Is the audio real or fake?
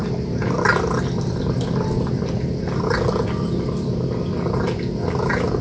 real